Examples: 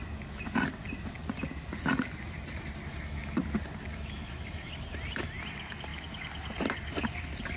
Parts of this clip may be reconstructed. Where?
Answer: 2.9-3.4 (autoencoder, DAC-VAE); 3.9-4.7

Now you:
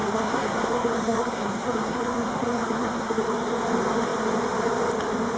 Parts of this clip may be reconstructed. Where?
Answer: 0.0-3.2 (codec, SNAC)

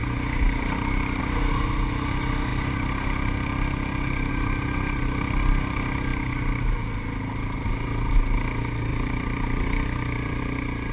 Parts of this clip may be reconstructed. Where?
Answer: 8.9-10.4 (vocoder, BigVGAN v2)

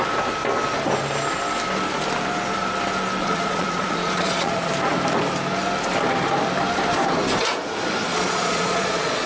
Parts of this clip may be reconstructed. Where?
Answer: 3.2-4.7 (vocoder, Vocos); 8.1-9.3

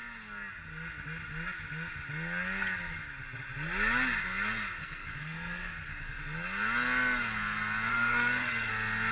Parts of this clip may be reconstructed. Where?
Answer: 4.8-6.2 (codec, SNAC); 7.9-8.7

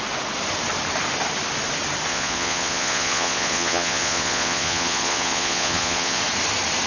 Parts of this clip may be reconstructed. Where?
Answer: 2.1-6.2 (vocoder, Vocos)

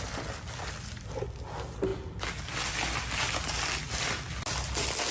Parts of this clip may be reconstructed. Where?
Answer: none